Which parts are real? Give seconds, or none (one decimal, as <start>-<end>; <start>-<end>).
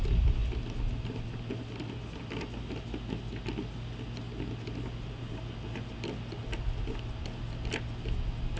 0.0-8.6